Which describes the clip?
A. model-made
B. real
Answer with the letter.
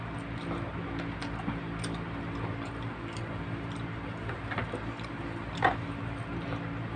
B